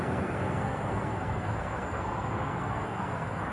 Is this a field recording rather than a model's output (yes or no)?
no